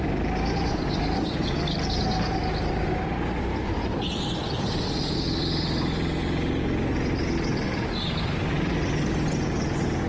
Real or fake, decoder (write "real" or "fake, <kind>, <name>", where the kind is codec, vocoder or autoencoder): real